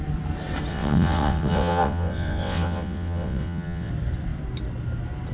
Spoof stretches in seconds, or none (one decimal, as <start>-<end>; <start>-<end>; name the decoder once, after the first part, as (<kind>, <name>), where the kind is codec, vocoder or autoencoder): 0.7-3.9 (vocoder, WaveNeXt)